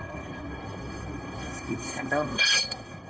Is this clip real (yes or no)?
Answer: no